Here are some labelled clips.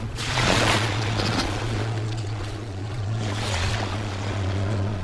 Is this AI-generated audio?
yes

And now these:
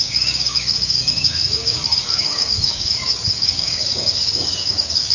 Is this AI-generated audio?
yes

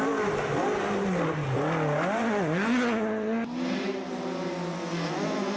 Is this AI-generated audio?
no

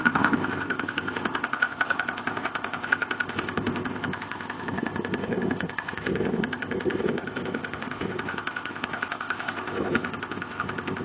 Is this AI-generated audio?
yes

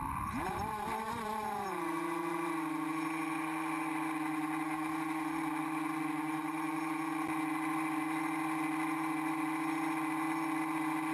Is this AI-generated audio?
no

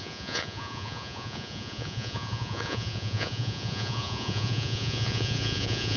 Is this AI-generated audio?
yes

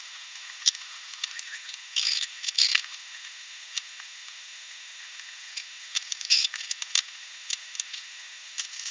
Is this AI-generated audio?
yes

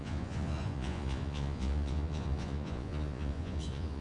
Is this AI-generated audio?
yes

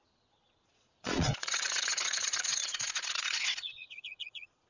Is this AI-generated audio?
yes